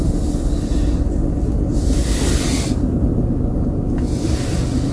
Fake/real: real